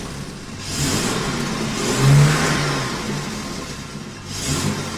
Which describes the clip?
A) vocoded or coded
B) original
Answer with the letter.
B